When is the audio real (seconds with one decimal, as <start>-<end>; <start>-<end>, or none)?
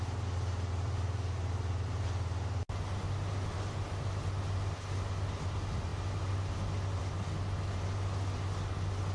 0.0-9.1